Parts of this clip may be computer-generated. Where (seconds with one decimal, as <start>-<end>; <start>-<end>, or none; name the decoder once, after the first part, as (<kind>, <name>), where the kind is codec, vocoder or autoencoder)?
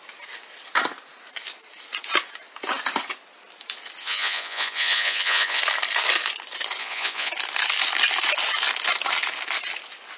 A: 4.0-5.6 (vocoder, Vocos); 6.8-7.3